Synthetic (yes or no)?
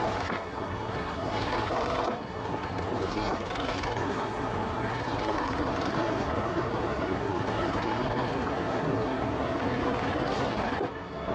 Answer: yes